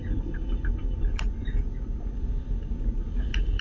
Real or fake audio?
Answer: real